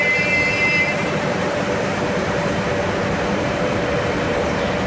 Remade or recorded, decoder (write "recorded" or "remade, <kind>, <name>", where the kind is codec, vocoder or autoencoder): remade, vocoder, BigVGAN v2